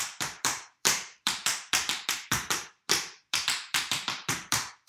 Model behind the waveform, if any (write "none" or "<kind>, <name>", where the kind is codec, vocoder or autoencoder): vocoder, BigVGAN v2